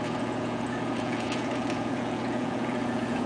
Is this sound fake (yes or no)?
yes